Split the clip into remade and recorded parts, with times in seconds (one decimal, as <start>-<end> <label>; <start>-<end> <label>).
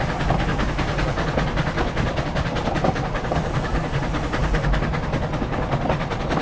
0.0-6.4 recorded